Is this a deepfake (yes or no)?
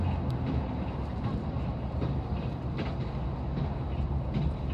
no